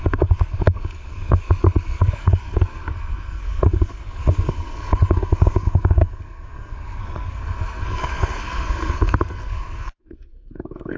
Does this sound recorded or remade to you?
remade